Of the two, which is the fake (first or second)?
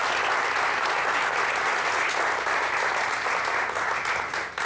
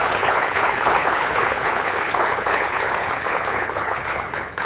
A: second